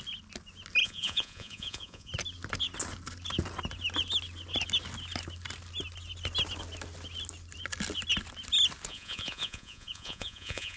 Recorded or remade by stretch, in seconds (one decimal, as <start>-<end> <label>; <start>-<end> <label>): 0.0-0.8 recorded; 0.8-2.1 remade; 2.1-8.9 recorded; 8.9-10.8 remade